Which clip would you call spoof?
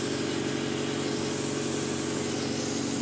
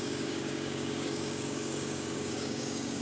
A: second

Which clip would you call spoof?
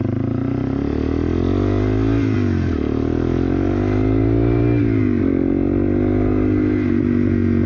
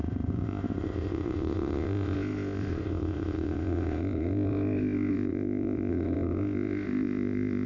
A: second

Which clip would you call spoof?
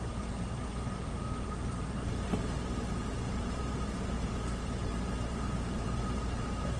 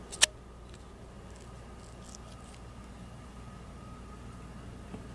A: first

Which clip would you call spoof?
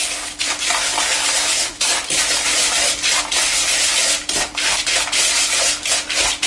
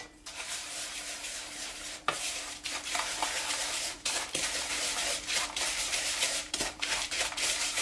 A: second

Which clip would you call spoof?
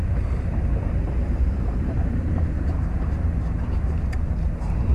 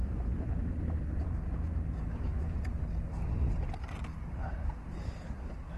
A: first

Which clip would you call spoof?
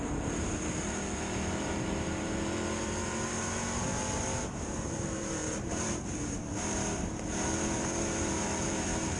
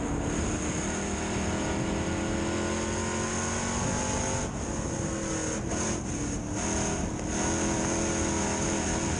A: first